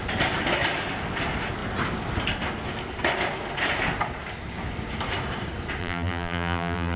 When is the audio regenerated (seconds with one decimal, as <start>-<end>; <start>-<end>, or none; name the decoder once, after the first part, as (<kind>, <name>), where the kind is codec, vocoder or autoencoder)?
5.8-7.0 (vocoder, BigVGAN v2)